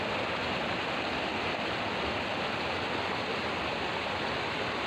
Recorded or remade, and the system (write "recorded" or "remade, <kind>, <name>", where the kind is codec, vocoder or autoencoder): recorded